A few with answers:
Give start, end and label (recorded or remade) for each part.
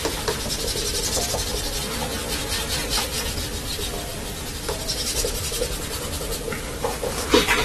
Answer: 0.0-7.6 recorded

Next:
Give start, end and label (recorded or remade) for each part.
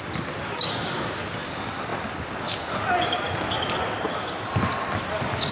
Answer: 0.0-0.5 recorded; 0.5-1.1 remade; 1.1-5.5 recorded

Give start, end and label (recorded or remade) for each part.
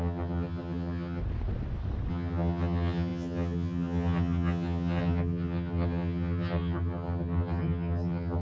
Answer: 0.0-1.2 remade; 1.2-2.1 recorded; 2.1-8.4 remade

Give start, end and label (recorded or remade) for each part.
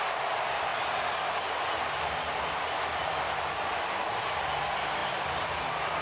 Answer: 0.0-6.0 recorded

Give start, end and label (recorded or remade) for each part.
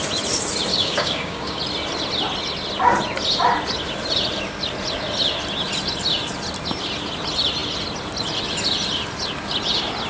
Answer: 0.0-0.7 recorded; 0.7-1.6 remade; 1.6-10.1 recorded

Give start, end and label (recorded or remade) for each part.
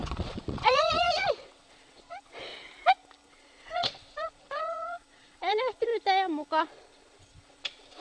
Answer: 0.0-2.5 remade; 2.5-3.3 recorded; 3.3-5.9 remade; 5.9-6.6 recorded; 6.6-8.0 remade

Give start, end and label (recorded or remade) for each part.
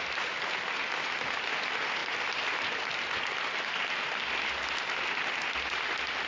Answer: 0.0-6.3 recorded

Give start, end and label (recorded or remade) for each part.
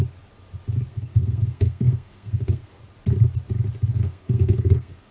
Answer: 0.0-0.9 recorded; 0.9-2.8 remade; 2.8-3.9 recorded; 3.9-5.1 remade